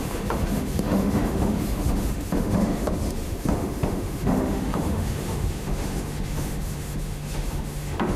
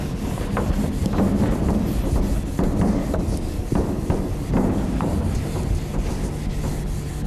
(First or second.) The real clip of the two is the second